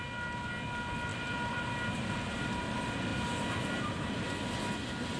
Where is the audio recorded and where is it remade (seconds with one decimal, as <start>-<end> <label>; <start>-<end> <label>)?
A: 0.0-1.1 recorded; 1.1-2.6 remade; 2.6-3.1 recorded; 3.1-4.3 remade; 4.3-5.2 recorded